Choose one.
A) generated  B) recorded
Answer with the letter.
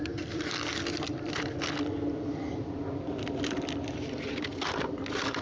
B